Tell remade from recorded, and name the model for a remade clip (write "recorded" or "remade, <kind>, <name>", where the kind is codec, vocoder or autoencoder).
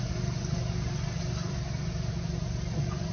recorded